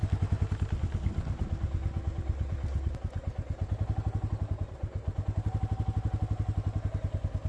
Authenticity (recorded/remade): recorded